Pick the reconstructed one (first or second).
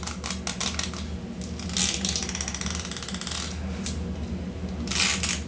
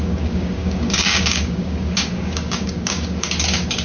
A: second